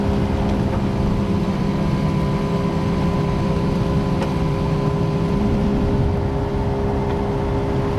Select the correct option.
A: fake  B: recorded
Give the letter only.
B